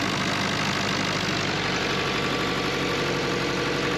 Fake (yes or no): no